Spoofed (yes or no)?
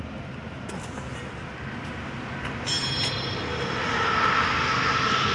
no